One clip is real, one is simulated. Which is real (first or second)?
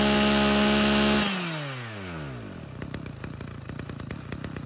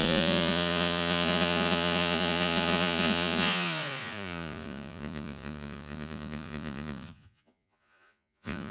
first